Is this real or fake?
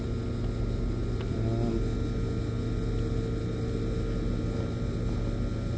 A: real